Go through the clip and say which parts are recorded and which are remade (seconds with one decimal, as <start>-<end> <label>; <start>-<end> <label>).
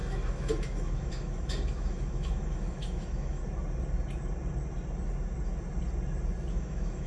0.0-3.4 remade; 3.4-6.5 recorded; 6.5-7.1 remade